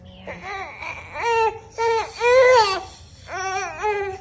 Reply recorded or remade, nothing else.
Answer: recorded